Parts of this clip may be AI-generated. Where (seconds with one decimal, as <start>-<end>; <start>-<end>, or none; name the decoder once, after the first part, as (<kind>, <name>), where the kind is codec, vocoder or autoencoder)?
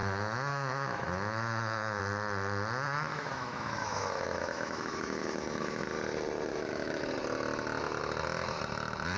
0.0-2.0 (autoencoder, DAC-VAE); 3.1-5.8; 6.5-7.1